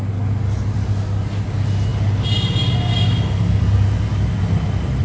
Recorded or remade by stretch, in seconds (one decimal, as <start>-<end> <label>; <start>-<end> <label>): 0.0-5.0 recorded